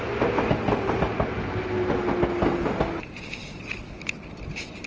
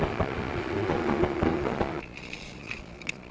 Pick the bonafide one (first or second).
first